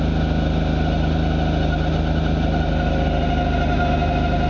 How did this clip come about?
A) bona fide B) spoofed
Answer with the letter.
A